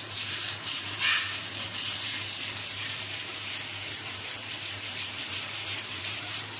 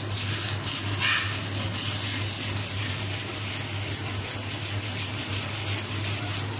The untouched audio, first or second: second